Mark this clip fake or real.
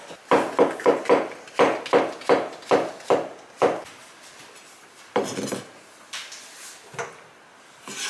real